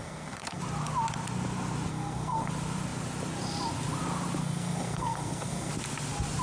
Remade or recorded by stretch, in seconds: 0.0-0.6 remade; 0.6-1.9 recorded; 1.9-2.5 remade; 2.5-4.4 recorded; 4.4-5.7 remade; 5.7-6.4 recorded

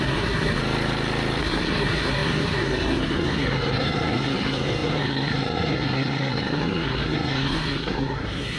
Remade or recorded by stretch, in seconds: 0.0-0.6 remade; 0.6-1.4 recorded; 1.4-8.6 remade